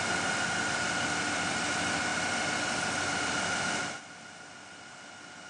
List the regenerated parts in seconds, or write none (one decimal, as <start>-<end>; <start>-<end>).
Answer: none

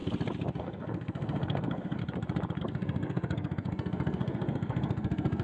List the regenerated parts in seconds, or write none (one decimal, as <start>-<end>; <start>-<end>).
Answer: 0.6-2.0; 2.6-5.4

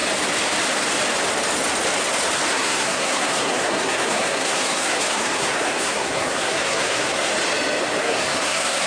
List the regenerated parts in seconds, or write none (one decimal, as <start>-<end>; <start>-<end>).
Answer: 2.5-7.3; 8.0-8.9

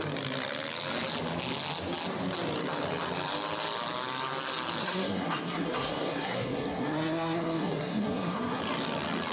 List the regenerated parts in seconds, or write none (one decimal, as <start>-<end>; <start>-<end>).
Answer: 4.8-8.6

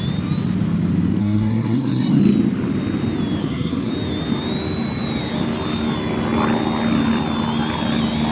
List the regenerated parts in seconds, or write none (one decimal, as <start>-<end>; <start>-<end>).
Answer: 1.2-2.2; 3.4-3.9